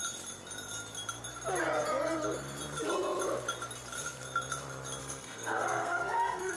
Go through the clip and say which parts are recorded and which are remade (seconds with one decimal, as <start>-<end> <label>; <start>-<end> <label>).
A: 0.0-5.0 recorded; 5.0-6.6 remade